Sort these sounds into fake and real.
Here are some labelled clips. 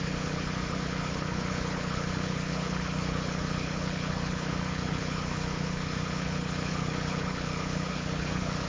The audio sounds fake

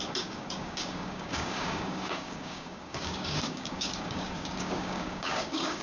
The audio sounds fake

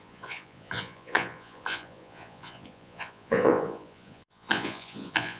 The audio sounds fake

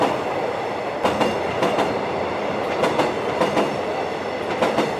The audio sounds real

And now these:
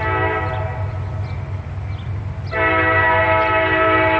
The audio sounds real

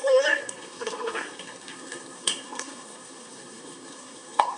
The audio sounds fake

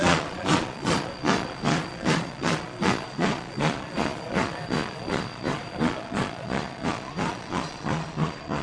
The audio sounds fake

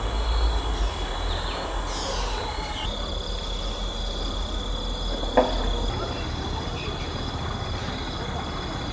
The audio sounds real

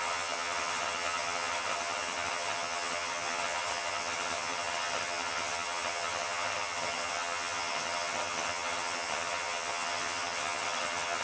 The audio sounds fake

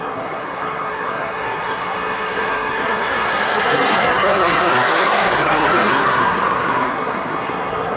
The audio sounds fake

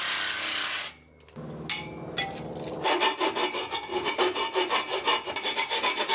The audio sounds real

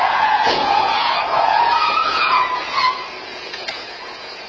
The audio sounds fake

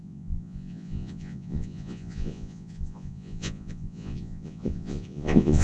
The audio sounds fake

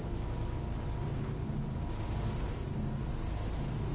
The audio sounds real